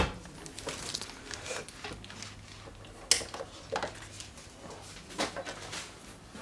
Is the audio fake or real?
real